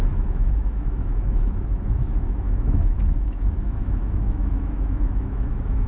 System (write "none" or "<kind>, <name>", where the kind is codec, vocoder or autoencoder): autoencoder, DAC-VAE